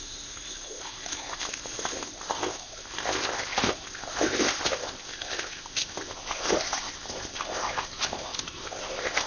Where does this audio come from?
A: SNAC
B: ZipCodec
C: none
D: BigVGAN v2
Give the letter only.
B